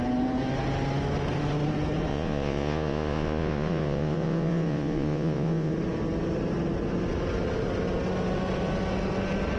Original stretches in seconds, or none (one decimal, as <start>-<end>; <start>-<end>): 0.0-2.1; 5.7-9.6